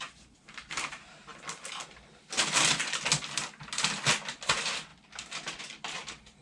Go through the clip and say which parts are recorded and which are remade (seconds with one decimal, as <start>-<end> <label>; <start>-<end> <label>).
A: 0.0-6.4 recorded

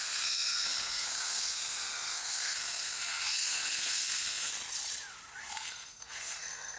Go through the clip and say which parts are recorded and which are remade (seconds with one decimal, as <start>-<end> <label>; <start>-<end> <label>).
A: 0.0-4.5 remade; 4.5-5.4 recorded; 5.4-6.8 remade

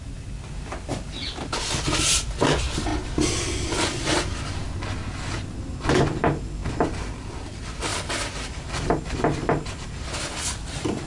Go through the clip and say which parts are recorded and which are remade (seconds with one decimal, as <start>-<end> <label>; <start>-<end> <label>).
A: 0.0-11.1 recorded

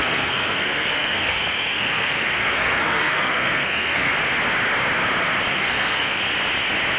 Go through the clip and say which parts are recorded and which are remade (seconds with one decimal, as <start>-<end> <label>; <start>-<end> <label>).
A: 0.0-4.1 remade; 4.1-5.5 recorded; 5.5-6.2 remade; 6.2-7.0 recorded

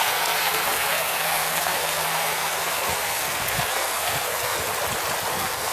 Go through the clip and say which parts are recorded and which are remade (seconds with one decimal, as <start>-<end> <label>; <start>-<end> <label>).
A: 0.0-4.7 remade; 4.7-5.3 recorded; 5.3-5.7 remade

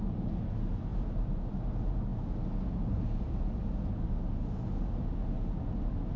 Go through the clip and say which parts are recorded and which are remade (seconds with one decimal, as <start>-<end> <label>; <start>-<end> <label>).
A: 0.0-6.2 recorded

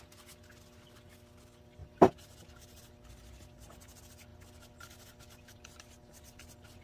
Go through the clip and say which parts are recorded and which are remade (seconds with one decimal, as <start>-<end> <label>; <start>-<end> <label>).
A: 0.0-6.8 recorded